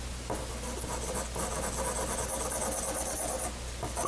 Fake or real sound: real